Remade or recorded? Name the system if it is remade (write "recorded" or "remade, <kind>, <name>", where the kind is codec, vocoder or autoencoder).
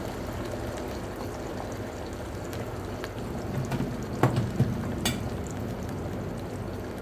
recorded